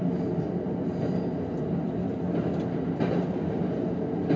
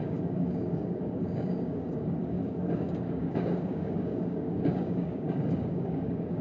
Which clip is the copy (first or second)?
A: second